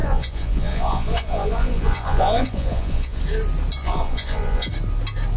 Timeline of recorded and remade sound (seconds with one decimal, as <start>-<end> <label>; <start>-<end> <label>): 0.0-3.2 remade; 3.2-3.8 recorded; 3.8-4.7 remade; 4.7-5.4 recorded